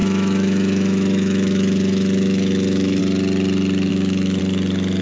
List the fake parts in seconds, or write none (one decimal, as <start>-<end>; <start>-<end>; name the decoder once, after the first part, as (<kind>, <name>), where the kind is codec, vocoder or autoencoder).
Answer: 0.0-3.0 (autoencoder, DAC-VAE); 3.9-4.4

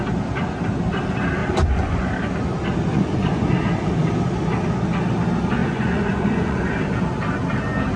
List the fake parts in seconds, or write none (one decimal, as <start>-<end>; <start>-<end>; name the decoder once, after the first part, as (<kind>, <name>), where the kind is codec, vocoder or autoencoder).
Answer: 1.4-2.1 (vocoder, Vocos); 2.9-3.5; 5.6-6.7

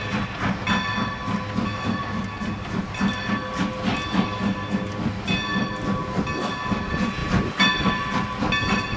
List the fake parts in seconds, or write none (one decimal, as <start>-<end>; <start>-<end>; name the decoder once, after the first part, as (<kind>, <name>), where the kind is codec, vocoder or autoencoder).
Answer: none

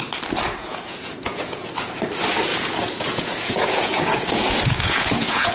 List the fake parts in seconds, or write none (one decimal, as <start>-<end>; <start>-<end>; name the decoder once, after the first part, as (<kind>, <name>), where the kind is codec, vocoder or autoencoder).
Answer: 0.6-1.7 (vocoder, Vocos); 2.5-5.5

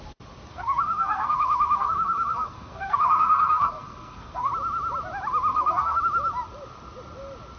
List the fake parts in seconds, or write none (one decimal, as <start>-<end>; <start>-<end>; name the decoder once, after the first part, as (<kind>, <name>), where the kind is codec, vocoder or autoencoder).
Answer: 0.5-4.5 (codec, SNAC); 5.5-6.0

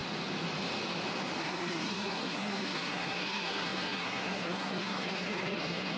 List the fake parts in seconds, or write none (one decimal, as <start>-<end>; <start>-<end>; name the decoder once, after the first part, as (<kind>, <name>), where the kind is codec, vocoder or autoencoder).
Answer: 1.4-6.0 (codec, SNAC)

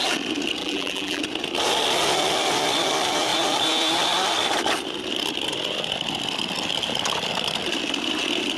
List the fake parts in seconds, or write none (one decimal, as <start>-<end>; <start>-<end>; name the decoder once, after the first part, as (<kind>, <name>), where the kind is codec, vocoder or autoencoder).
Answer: 0.6-1.2 (vocoder, BigVGAN v2)